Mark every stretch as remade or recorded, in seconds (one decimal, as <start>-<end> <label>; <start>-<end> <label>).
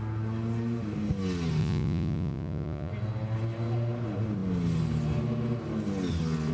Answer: 0.0-1.6 recorded; 1.6-2.9 remade; 2.9-6.5 recorded